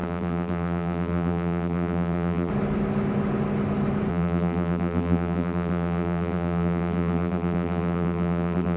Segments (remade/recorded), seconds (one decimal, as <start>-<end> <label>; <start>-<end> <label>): 0.0-2.5 remade; 2.5-4.1 recorded; 4.1-8.8 remade